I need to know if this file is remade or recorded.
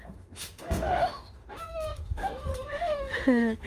remade